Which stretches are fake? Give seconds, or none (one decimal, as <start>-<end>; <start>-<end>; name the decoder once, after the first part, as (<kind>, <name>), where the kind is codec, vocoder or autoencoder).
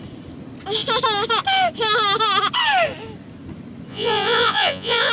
3.9-5.1 (vocoder, Vocos)